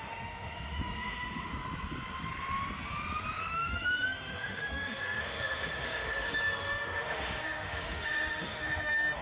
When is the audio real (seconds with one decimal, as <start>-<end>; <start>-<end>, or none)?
1.5-3.4